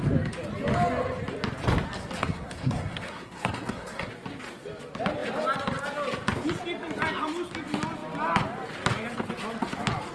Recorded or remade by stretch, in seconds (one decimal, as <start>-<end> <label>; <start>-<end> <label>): 0.0-2.2 recorded; 2.2-4.1 remade; 4.1-10.1 recorded